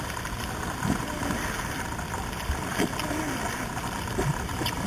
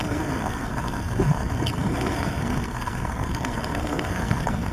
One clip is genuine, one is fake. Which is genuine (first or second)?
first